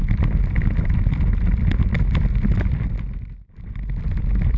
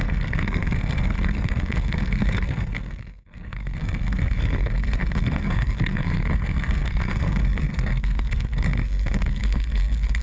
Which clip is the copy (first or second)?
second